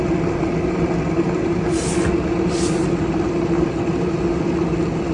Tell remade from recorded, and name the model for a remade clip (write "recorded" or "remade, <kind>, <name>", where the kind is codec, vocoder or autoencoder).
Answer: recorded